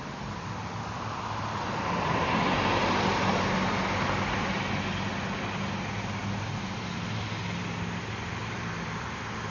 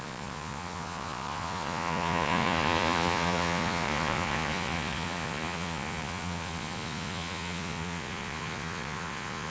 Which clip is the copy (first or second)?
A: second